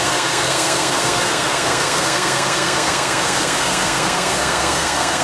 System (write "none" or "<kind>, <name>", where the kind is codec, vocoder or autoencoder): codec, SNAC